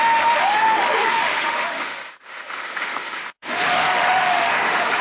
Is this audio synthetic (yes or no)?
yes